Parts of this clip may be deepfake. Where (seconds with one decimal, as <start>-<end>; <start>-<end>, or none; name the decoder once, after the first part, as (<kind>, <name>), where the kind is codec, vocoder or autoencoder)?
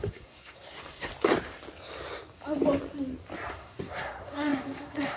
0.0-1.1 (codec, SNAC); 3.5-5.2